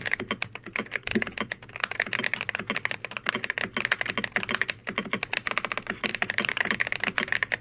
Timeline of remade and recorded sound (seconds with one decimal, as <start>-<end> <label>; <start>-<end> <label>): 0.0-6.1 recorded; 6.1-6.7 remade; 6.7-7.6 recorded